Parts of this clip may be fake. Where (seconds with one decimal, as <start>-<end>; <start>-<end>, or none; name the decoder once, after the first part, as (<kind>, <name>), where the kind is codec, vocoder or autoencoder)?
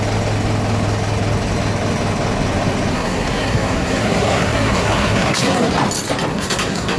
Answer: 2.9-5.7 (codec, SNAC); 6.3-7.0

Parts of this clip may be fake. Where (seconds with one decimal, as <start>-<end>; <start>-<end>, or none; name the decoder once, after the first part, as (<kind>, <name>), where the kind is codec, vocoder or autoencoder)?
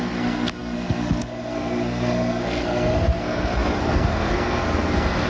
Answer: 0.0-5.3 (codec, SNAC)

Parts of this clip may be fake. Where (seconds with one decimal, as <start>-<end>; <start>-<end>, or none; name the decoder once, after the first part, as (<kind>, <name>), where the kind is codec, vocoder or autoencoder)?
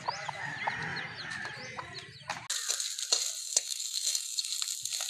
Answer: 3.4-4.5 (codec, SNAC)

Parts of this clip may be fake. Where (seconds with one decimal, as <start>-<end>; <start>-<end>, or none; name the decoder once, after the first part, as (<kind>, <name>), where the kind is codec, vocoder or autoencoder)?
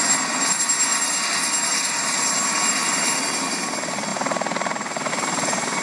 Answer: none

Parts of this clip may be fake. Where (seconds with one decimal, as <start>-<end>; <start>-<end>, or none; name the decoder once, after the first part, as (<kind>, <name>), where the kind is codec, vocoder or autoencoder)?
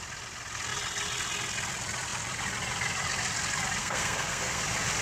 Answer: 3.8-4.6 (codec, SNAC)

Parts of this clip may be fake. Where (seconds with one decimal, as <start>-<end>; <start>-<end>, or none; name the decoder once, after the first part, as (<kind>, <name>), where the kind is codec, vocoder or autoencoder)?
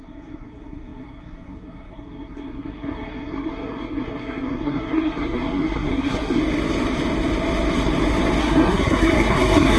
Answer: 0.0-6.4 (codec, SNAC); 8.4-9.8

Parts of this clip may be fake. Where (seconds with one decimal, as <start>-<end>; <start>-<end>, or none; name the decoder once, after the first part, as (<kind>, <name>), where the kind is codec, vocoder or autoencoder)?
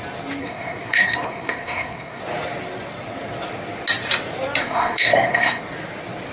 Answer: 0.4-2.2 (codec, SNAC); 4.6-5.6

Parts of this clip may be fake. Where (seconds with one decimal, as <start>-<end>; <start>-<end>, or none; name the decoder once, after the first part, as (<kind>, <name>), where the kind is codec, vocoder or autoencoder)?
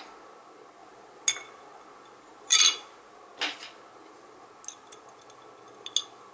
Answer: none